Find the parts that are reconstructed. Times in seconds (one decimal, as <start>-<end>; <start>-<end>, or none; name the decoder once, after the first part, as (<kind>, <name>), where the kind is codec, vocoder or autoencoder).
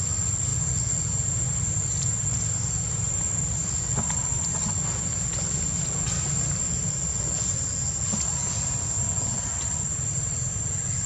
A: none